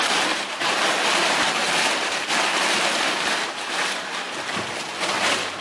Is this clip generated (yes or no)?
yes